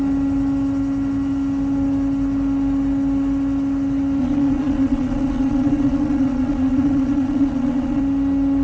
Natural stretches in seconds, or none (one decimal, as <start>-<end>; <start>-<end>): 0.0-4.2; 8.0-8.6